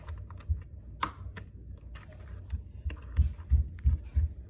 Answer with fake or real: real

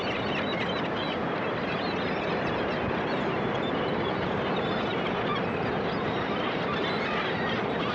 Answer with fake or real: real